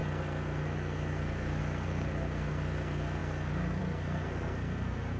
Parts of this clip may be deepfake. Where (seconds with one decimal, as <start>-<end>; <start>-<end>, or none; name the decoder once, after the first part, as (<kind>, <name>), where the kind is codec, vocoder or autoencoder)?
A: 0.0-5.2 (codec, SNAC)